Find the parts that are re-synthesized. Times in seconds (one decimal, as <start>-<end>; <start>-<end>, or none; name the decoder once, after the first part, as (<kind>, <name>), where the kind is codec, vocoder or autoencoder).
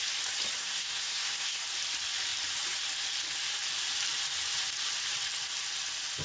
0.6-1.6 (codec, SNAC)